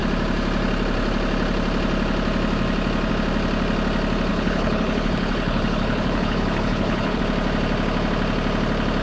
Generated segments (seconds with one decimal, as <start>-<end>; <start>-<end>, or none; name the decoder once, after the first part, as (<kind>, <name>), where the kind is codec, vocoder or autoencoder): 4.3-7.2 (codec, HILCodec)